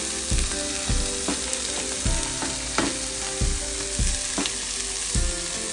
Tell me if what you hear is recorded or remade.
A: recorded